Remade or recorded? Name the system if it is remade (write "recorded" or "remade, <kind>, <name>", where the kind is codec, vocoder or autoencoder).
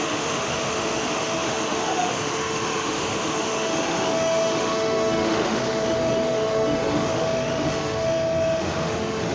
remade, autoencoder, DAC-VAE